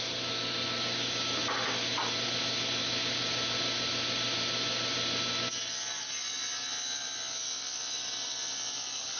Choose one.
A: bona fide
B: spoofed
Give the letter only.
A